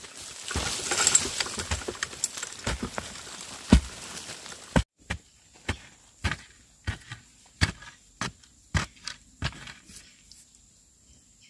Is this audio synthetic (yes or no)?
no